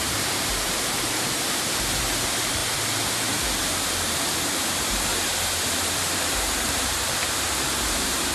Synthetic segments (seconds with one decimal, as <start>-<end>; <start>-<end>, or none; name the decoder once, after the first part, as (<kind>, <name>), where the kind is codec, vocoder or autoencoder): 0.0-2.6 (vocoder, BigVGAN v2); 3.3-5.1; 5.7-8.3